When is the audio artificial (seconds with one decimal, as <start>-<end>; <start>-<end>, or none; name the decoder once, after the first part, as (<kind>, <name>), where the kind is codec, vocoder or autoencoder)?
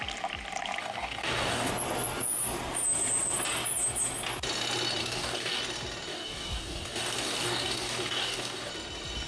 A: 0.8-1.7 (codec, DAC); 5.0-5.6; 6.1-8.7